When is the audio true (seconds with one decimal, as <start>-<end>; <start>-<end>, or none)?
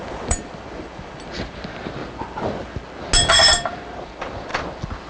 2.0-3.3; 4.5-5.1